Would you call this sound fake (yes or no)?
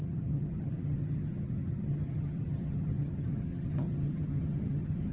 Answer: yes